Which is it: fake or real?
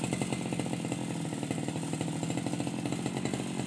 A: real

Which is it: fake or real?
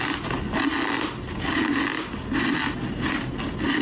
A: real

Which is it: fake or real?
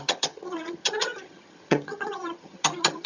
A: fake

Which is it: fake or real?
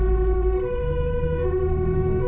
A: fake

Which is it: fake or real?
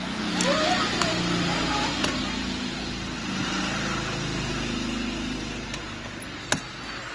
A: real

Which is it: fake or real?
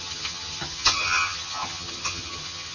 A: fake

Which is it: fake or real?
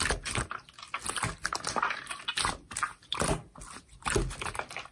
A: real